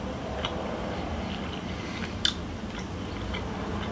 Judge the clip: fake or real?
real